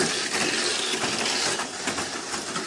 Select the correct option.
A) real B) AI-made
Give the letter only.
A